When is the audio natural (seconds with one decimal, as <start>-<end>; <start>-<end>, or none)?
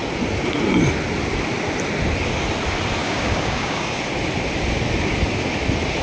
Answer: 0.0-3.0; 4.0-6.0